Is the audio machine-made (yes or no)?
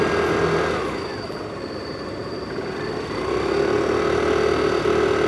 no